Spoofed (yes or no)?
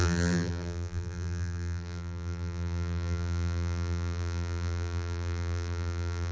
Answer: yes